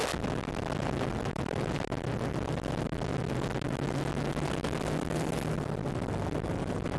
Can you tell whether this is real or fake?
real